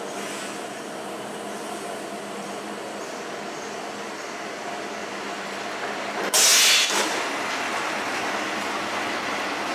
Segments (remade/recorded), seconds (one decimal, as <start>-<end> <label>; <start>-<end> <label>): 0.0-9.7 recorded